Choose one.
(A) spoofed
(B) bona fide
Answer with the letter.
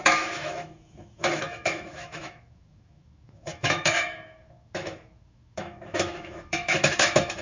A